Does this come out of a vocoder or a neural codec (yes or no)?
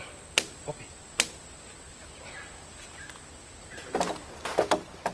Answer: no